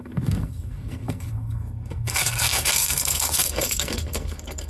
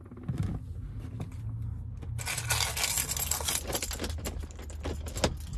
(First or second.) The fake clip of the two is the first